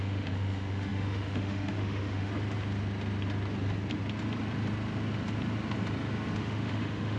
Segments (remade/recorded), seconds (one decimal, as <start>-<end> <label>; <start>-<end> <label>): 0.0-2.3 remade; 2.3-6.4 recorded; 6.4-7.2 remade